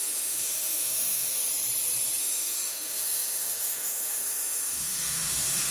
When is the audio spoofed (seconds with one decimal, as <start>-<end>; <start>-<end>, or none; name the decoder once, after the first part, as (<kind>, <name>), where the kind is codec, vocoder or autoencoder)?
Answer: 0.0-1.5 (autoencoder, DAC-VAE); 2.2-5.7